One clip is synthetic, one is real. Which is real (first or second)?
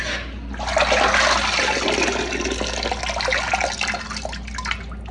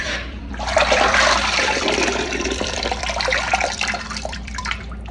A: first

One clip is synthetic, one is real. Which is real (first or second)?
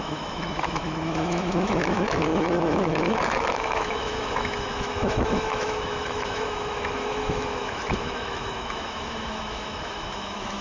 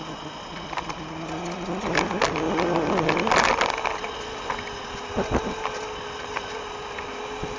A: second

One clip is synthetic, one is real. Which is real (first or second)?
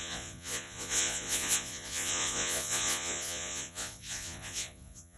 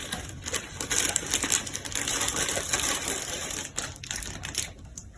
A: second